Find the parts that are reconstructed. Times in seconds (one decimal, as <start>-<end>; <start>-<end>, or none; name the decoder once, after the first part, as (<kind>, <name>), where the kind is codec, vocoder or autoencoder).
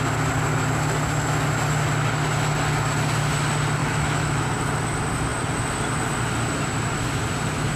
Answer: 3.8-4.5 (autoencoder, DAC-VAE)